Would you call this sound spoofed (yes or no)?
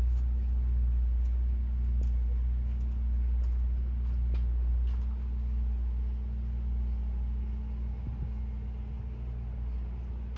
no